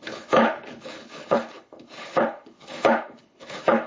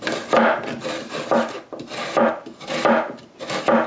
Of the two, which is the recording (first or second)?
second